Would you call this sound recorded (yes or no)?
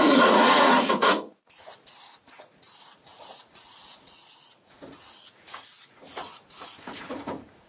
no